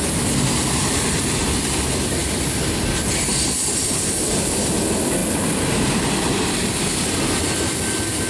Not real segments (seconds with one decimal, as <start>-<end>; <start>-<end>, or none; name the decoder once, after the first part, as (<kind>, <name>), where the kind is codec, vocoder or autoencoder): none